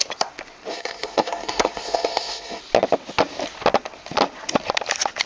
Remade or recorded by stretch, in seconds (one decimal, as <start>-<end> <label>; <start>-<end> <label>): 0.0-0.7 recorded; 0.7-2.6 remade; 2.6-5.3 recorded